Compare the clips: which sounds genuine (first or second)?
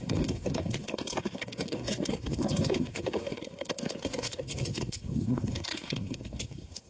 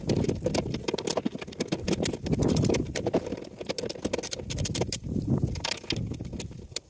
second